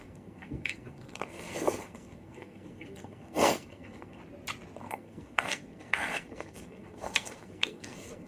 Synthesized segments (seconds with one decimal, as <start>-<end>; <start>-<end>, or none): 0.0-4.2; 4.8-8.3